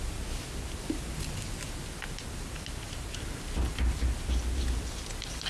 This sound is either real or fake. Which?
real